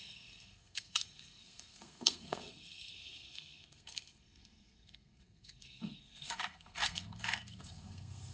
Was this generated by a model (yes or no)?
yes